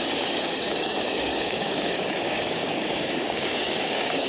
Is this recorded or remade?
remade